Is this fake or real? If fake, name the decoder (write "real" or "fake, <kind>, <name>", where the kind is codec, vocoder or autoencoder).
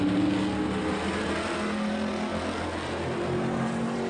real